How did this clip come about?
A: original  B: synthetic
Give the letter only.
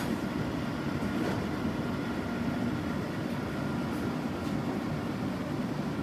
A